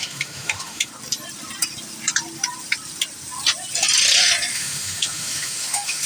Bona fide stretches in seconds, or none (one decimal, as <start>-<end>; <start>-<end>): 0.9-4.5